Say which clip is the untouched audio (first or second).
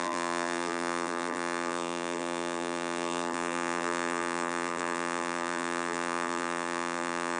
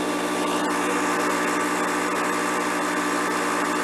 second